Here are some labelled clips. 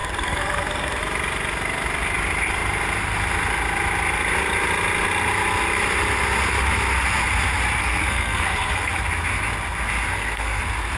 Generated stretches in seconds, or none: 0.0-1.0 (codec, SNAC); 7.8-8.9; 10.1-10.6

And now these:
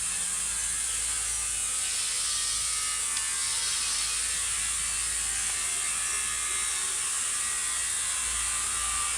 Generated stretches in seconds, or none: none

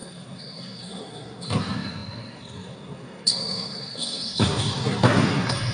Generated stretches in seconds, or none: 0.0-5.7 (codec, SNAC)

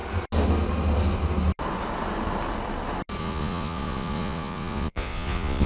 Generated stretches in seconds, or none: 3.2-5.7 (vocoder, Vocos)

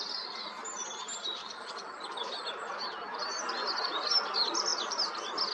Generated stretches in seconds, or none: 1.4-3.7 (vocoder, BigVGAN v2); 4.7-5.5